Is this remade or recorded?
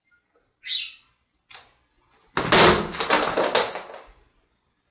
recorded